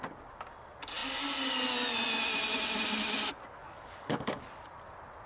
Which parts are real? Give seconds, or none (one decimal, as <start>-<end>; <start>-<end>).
0.0-3.6; 4.4-5.3